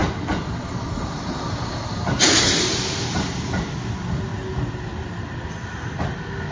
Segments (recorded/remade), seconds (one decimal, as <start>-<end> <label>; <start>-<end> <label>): 0.0-6.5 recorded